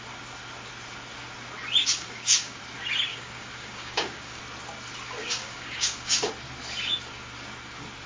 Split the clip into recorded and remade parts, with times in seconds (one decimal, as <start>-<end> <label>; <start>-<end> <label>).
0.0-1.8 recorded; 1.8-2.6 remade; 2.6-3.1 recorded; 3.1-4.4 remade; 4.4-5.2 recorded; 5.2-6.3 remade; 6.3-8.1 recorded